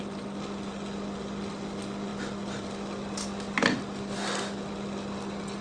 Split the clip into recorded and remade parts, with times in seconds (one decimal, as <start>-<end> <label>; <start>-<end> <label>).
0.0-5.6 recorded